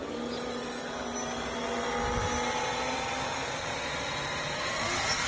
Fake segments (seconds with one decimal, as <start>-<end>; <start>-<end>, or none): 2.2-5.3